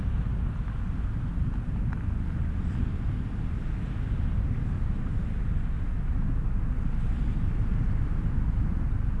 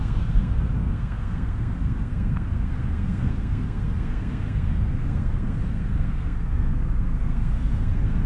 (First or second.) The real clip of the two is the first